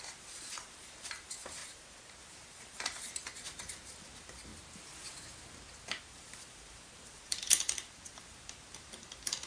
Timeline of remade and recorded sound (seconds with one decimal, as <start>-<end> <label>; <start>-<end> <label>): 0.0-4.5 remade; 4.5-6.0 recorded; 6.0-9.5 remade